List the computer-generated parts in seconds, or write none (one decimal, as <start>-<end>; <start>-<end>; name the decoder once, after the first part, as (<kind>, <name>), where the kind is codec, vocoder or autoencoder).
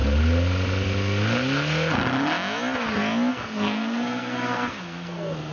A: 3.3-5.5 (codec, SNAC)